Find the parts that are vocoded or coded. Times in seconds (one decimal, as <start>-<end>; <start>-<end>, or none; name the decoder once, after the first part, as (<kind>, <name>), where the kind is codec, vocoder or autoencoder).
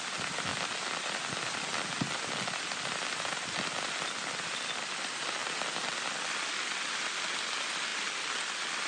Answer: none